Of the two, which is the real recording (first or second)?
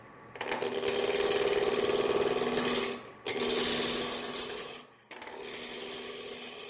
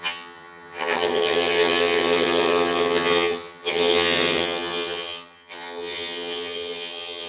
first